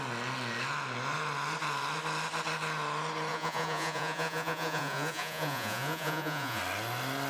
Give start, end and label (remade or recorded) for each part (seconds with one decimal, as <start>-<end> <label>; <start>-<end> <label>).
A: 0.0-3.3 recorded; 3.3-6.6 remade; 6.6-7.3 recorded